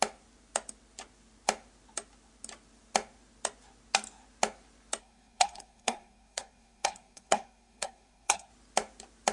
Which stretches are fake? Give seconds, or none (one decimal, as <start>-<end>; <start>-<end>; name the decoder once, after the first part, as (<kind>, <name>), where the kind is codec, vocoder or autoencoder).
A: 5.0-8.5 (codec, SNAC)